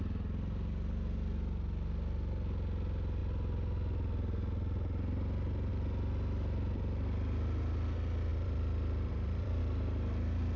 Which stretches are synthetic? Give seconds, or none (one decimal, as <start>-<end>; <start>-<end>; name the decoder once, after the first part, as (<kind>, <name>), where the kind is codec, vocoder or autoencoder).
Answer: 8.3-9.6 (vocoder, BigVGAN v2)